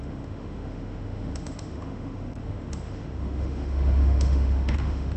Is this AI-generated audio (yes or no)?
yes